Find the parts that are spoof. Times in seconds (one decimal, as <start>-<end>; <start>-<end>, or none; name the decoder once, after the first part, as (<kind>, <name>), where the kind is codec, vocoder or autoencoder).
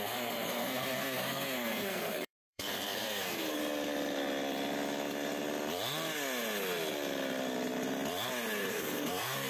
0.0-3.6 (codec, SNAC); 8.7-9.5